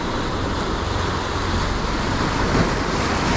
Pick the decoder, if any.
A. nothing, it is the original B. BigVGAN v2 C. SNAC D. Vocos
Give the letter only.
A